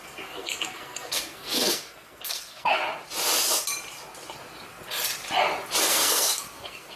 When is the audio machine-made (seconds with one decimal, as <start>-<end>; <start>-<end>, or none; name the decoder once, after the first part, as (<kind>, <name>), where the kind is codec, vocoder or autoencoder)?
0.0-2.8 (codec, SNAC); 5.8-7.0